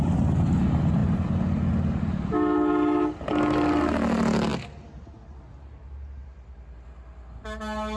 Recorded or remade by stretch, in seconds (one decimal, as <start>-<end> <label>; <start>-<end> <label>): 0.0-8.0 recorded